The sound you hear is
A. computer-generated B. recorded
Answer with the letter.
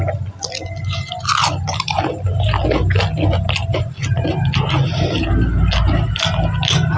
B